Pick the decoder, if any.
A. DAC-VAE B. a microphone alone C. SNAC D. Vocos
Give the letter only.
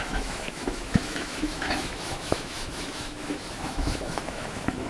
A